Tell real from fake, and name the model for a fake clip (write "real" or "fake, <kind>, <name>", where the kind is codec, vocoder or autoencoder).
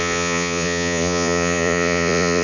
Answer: fake, vocoder, Vocos